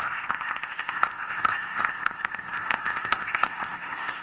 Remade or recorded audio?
remade